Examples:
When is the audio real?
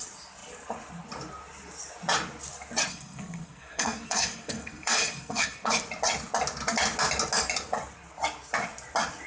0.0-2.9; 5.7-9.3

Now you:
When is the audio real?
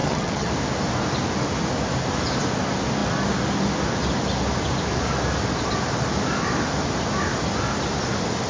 0.5-8.5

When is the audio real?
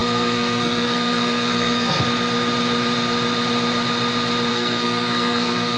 2.0-4.5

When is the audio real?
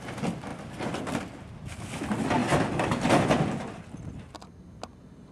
0.0-5.3